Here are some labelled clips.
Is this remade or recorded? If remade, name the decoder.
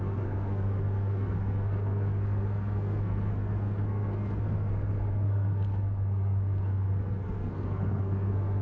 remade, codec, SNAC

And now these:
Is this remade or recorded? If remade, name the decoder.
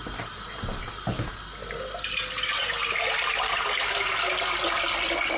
recorded